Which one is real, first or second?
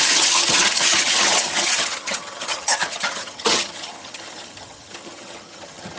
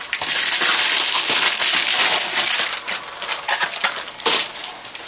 second